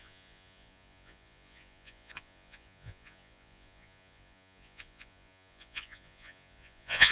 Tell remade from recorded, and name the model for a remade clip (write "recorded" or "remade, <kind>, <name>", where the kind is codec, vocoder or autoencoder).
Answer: remade, vocoder, Vocos